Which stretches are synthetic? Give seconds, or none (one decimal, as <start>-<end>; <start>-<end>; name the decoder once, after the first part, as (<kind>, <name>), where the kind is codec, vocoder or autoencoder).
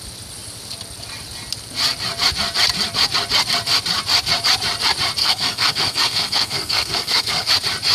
5.2-7.5 (codec, SNAC)